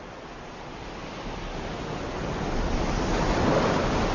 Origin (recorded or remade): recorded